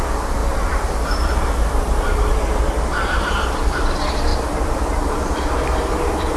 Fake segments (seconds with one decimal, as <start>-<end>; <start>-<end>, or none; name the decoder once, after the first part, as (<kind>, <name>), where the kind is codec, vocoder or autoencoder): 0.4-3.3 (vocoder, BigVGAN v2); 4.3-6.4